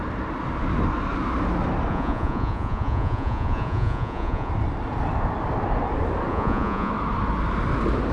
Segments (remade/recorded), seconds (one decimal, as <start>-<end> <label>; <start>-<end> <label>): 0.0-1.9 recorded; 1.9-4.5 remade; 4.5-6.3 recorded; 6.3-6.9 remade; 6.9-8.1 recorded